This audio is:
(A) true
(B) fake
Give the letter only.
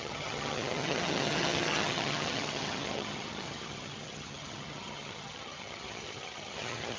B